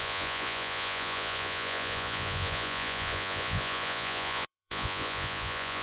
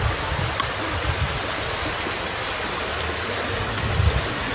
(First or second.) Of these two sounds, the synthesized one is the first